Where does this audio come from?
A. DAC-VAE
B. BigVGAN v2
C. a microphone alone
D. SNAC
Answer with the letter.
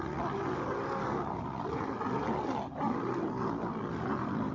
C